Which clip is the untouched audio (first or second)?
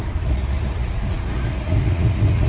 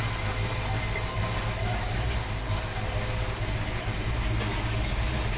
second